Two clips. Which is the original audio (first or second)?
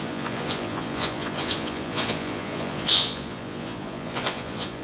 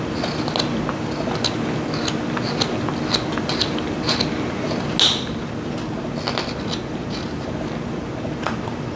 second